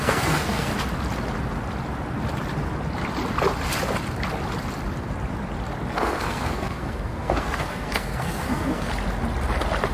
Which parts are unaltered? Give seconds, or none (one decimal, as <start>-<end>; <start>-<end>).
0.7-5.9; 8.9-9.9